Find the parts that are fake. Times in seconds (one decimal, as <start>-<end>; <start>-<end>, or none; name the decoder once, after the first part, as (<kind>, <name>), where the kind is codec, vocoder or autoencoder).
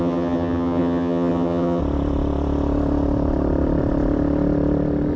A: 0.0-1.8 (vocoder, HiFi-GAN)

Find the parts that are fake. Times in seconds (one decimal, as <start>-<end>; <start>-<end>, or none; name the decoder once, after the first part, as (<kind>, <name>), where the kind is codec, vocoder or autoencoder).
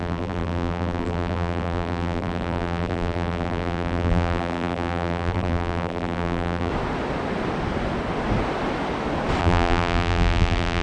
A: 0.0-6.7 (vocoder, BigVGAN v2); 9.4-10.8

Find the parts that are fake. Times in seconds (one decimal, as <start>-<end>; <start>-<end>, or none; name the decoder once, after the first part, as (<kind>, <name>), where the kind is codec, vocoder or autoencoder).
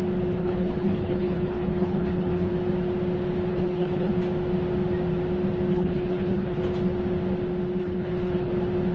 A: 0.4-2.5 (codec, HILCodec); 3.5-4.1; 5.7-6.6; 7.8-8.5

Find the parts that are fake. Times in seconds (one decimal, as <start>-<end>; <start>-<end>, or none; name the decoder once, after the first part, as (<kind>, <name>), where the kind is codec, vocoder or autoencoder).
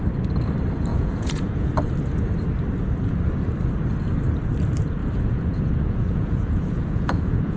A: 0.9-1.7 (vocoder, Vocos); 5.0-7.6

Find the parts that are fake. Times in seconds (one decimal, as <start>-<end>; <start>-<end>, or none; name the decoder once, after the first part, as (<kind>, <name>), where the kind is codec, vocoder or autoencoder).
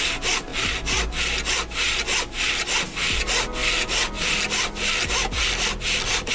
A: none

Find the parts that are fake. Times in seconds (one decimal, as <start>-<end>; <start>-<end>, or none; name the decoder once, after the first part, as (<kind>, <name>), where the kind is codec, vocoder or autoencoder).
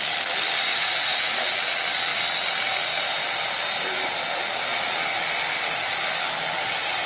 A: 0.7-1.4 (vocoder, Vocos)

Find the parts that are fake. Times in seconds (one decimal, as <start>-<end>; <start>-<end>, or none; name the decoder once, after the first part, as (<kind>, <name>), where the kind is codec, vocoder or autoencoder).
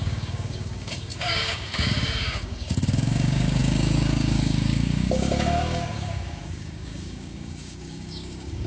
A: 0.0-8.7 (codec, DAC)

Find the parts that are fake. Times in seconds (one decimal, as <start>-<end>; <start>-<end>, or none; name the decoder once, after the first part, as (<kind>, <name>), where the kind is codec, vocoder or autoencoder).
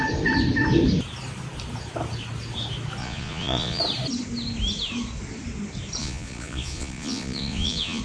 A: 3.0-3.8 (vocoder, Vocos); 6.0-8.0